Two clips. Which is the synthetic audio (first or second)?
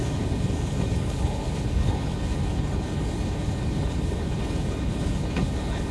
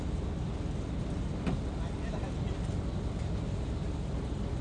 first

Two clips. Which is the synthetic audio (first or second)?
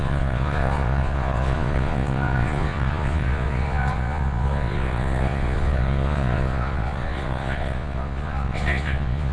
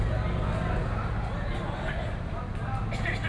first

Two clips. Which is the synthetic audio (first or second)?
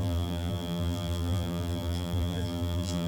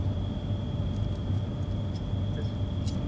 first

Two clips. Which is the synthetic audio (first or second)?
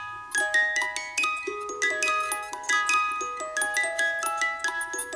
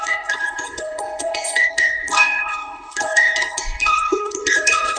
second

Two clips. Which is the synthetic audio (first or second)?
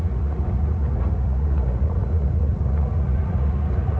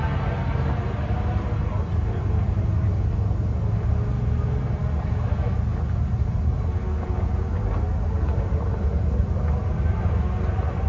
first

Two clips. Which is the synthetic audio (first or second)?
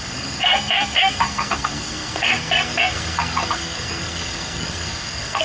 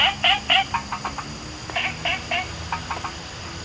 first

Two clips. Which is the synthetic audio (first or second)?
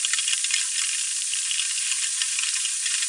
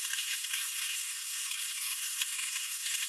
second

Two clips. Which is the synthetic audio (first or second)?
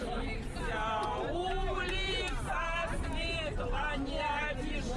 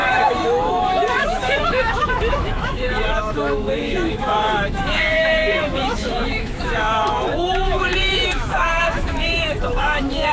second